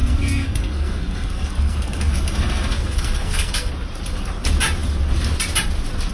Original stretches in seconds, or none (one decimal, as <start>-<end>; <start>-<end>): 3.7-6.1